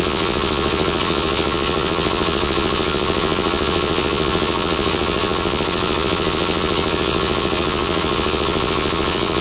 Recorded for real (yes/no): no